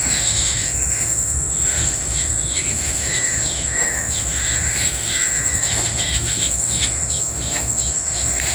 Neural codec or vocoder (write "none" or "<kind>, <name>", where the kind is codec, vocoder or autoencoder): autoencoder, DAC-VAE